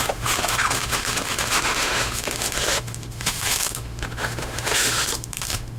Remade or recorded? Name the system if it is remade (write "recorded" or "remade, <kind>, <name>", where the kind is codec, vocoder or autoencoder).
remade, autoencoder, DAC-VAE